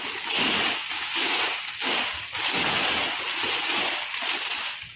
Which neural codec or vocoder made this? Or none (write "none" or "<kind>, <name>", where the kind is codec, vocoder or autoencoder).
none